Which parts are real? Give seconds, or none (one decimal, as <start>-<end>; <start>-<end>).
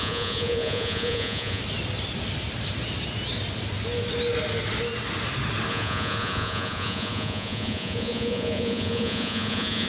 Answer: 1.6-5.7